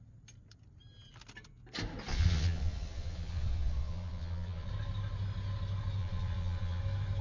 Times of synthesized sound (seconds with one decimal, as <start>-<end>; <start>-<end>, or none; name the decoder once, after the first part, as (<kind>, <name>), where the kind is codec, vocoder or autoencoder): 2.1-4.7 (vocoder, Vocos); 6.0-6.8